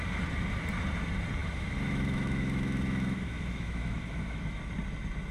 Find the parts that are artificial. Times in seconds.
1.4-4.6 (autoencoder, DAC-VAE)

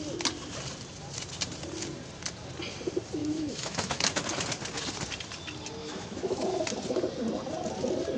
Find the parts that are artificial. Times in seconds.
3.2-4.2 (autoencoder, DAC-VAE); 5.8-6.4